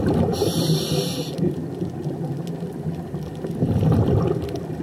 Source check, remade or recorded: recorded